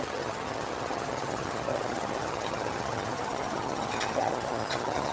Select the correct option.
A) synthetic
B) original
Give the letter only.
A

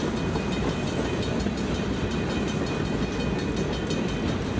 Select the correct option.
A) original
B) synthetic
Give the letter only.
A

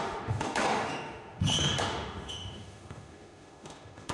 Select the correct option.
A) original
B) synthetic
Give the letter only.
B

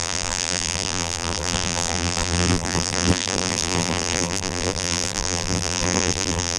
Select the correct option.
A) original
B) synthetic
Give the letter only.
B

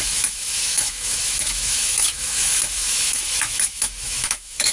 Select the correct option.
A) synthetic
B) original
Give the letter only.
A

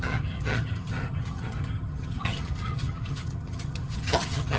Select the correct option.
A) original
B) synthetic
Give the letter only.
B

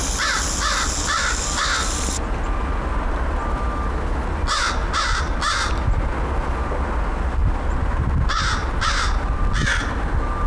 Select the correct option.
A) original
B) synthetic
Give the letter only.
A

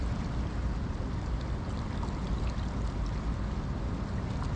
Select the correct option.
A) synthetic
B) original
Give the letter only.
B